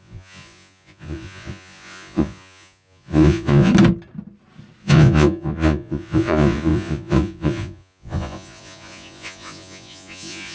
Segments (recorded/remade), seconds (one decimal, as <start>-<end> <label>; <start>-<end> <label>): 0.0-3.7 remade; 3.7-4.8 recorded; 4.8-10.5 remade